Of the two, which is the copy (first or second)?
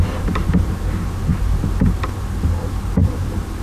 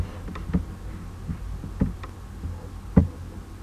first